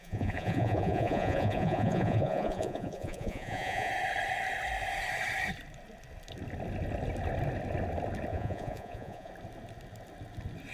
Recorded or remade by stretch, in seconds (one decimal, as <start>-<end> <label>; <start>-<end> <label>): 0.0-3.9 remade; 3.9-8.3 recorded; 8.3-9.3 remade; 9.3-10.7 recorded